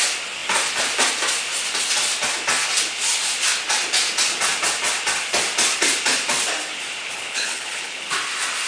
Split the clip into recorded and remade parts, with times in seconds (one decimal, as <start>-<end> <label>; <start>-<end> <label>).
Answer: 0.0-7.1 recorded; 7.1-8.1 remade; 8.1-8.7 recorded